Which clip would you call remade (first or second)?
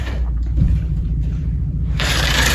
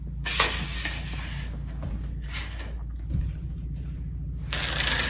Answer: first